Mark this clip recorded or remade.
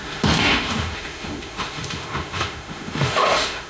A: remade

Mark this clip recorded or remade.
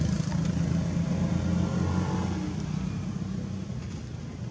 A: recorded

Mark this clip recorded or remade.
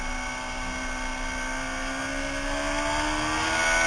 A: recorded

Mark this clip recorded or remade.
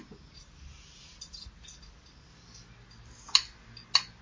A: recorded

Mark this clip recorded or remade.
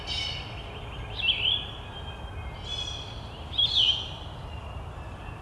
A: recorded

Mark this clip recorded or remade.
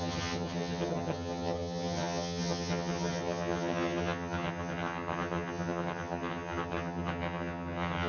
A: remade